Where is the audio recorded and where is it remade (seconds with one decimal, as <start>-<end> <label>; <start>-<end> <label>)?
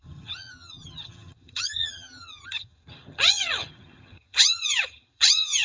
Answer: 0.0-5.6 remade